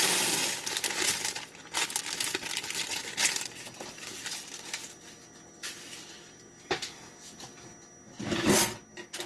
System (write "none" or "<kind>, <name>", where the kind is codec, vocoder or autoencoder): none